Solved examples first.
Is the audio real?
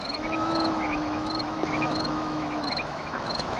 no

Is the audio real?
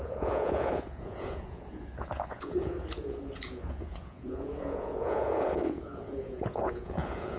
no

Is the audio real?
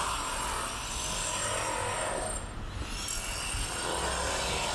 yes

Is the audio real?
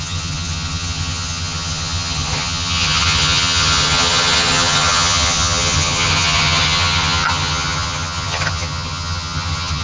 no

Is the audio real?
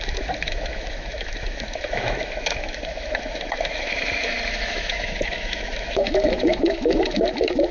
no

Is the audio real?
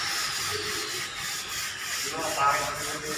yes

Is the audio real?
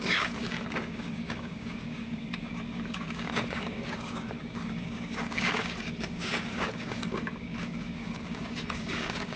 no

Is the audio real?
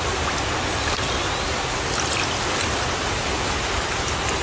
yes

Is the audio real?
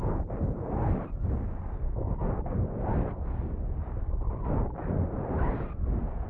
yes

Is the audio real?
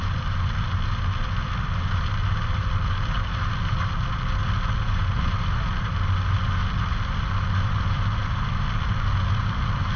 yes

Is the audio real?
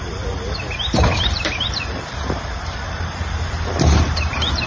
no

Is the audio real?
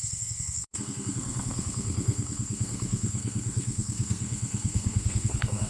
no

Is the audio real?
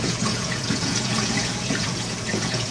no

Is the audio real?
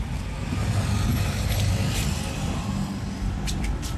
yes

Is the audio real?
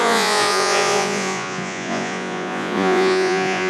no